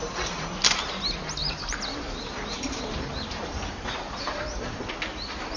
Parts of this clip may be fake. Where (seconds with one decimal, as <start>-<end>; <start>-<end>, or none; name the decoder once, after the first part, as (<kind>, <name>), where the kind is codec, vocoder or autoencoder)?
1.4-4.8 (vocoder, BigVGAN v2)